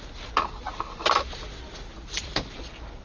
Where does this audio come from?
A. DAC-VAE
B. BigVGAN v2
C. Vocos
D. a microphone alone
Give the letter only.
D